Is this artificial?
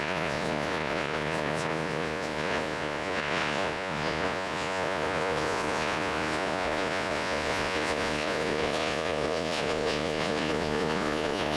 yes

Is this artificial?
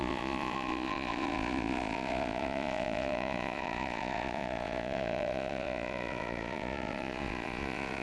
yes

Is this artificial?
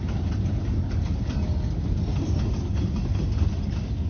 no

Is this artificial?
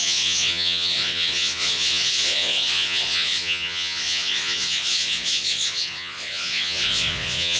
yes